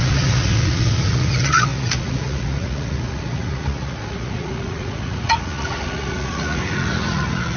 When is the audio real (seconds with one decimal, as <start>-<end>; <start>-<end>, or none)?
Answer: none